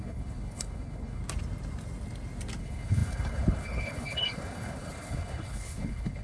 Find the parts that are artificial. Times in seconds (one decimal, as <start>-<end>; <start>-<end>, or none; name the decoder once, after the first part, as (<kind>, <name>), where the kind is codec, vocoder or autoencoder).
0.0-1.2 (codec, HILCodec); 2.6-6.2